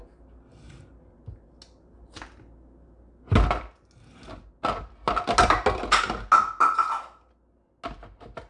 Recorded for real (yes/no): yes